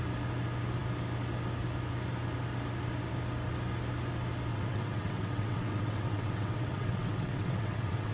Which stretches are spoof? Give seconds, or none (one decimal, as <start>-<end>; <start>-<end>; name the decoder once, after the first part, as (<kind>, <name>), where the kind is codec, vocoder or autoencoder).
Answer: 4.5-8.1 (vocoder, WaveNeXt)